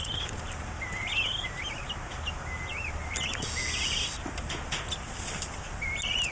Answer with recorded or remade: recorded